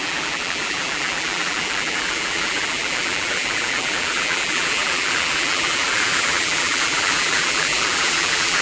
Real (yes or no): no